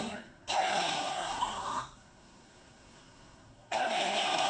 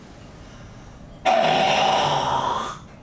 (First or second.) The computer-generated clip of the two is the first